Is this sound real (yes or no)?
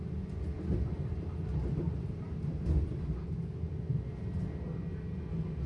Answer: yes